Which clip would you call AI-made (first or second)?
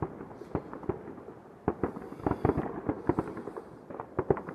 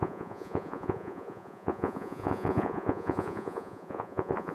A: second